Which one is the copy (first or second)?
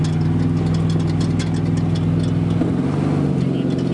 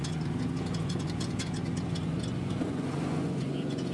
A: second